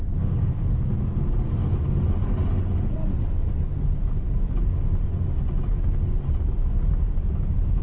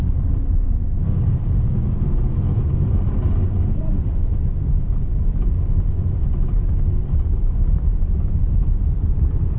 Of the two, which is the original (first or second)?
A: first